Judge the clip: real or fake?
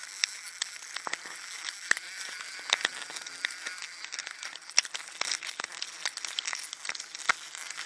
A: real